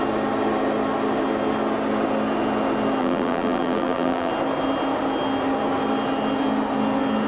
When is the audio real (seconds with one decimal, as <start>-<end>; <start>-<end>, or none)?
0.0-3.0; 4.3-7.3

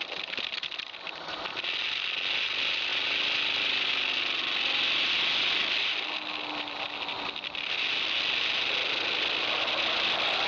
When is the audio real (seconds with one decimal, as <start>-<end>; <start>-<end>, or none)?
0.0-10.5

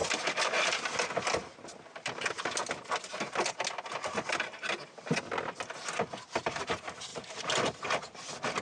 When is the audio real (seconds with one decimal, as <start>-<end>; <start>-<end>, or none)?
0.0-7.1; 7.8-8.6

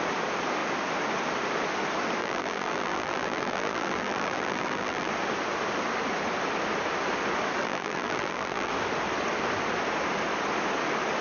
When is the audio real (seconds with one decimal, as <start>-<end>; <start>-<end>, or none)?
0.0-2.2; 5.1-7.6; 8.7-11.2